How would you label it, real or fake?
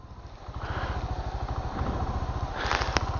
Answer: real